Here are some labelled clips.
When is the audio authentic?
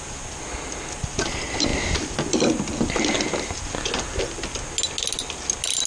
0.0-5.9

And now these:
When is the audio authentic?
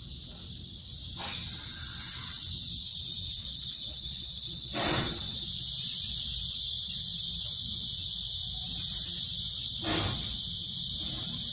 0.0-3.4; 5.5-11.5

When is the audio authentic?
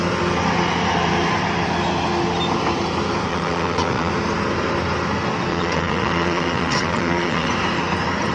0.0-3.3; 4.1-5.5; 7.5-8.3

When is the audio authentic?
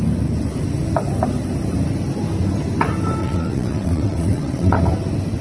0.0-3.2; 4.8-5.4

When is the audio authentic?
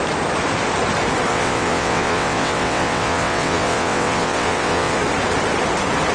0.0-1.3; 5.0-6.1